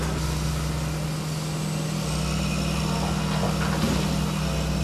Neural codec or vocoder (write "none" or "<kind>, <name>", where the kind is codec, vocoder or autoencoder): none